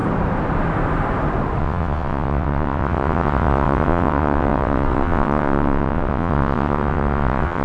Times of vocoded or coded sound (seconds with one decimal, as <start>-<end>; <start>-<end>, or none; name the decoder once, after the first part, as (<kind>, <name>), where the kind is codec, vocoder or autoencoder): 1.6-7.6 (vocoder, WaveNeXt)